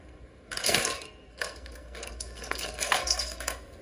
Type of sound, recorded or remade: remade